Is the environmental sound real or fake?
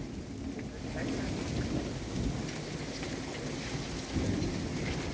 real